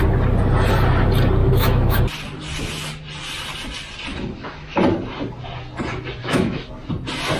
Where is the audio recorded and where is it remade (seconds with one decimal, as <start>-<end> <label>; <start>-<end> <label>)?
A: 0.0-1.4 recorded; 1.4-2.0 remade; 2.0-4.1 recorded; 4.1-4.8 remade; 4.8-6.2 recorded; 6.2-6.7 remade; 6.7-7.4 recorded